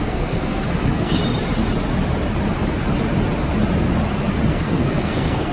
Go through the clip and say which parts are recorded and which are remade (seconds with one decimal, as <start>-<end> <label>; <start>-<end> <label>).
0.0-1.2 remade; 1.2-4.5 recorded; 4.5-5.5 remade